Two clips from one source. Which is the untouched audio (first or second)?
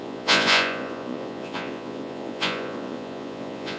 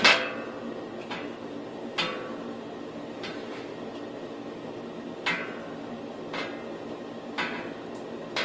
second